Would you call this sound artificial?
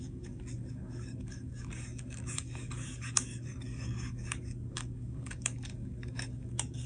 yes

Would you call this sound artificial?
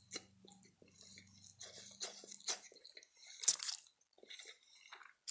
no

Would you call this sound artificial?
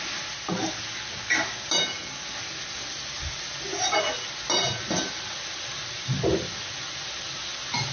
no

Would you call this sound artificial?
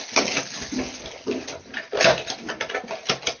no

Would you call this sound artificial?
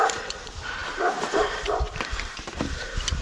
yes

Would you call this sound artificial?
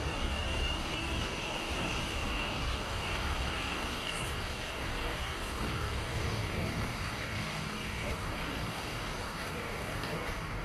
yes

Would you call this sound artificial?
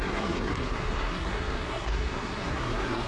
yes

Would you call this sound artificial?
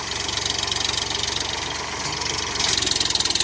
no